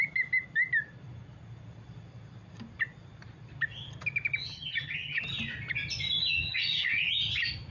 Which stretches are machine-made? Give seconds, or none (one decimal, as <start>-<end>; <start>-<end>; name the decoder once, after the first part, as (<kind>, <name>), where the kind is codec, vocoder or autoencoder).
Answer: 4.5-5.2 (vocoder, HiFi-GAN); 6.2-7.1